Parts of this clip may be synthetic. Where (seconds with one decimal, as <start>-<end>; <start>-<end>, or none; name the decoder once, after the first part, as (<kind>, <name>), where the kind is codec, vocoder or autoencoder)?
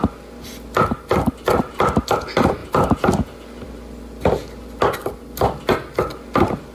2.6-3.2 (vocoder, BigVGAN v2)